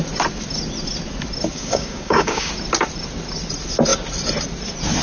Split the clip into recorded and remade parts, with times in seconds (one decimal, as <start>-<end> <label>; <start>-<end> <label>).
0.0-1.5 recorded; 1.5-2.5 remade; 2.5-5.0 recorded